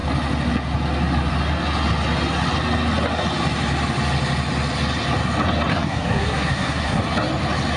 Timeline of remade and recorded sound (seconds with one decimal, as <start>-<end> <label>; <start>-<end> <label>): 0.0-5.7 recorded; 5.7-7.0 remade; 7.0-7.8 recorded